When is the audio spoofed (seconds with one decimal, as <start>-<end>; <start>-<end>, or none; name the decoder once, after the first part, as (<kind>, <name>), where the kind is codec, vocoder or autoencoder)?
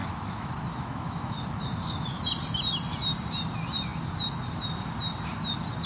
0.0-2.2 (autoencoder, DAC-VAE)